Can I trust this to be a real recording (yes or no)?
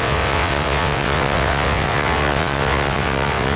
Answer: no